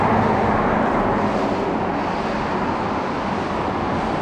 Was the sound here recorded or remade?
recorded